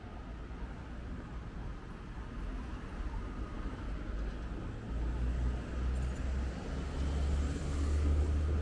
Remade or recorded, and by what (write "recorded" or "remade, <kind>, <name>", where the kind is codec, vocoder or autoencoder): recorded